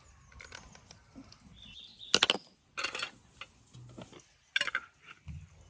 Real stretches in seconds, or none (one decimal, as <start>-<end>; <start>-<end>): 0.0-5.7